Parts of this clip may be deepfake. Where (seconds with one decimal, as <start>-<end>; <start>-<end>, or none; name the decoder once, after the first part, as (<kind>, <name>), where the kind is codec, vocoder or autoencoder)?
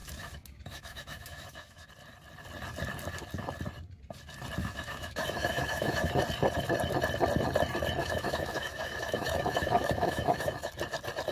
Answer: 0.0-1.9 (autoencoder, DAC-VAE); 4.6-6.1; 8.0-10.7